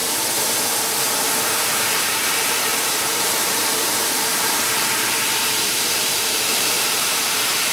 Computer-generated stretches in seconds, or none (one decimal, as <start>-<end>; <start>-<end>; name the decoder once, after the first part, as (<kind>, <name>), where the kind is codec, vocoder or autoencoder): 1.5-7.7 (vocoder, BigVGAN v2)